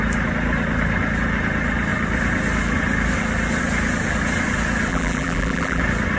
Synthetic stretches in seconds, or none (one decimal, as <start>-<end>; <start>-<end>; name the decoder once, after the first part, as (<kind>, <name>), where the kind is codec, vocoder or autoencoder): 4.9-5.8 (vocoder, BigVGAN v2)